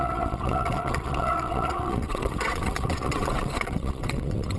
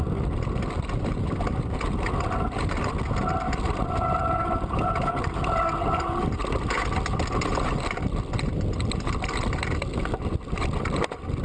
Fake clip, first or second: first